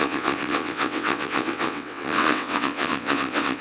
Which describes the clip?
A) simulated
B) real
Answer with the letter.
A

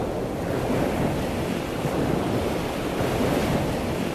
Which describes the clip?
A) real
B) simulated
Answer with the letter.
A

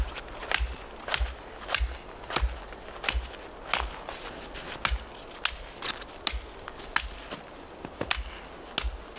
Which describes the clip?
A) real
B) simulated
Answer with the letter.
A